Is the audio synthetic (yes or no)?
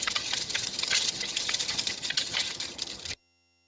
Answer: yes